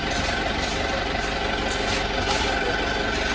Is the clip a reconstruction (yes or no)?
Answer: no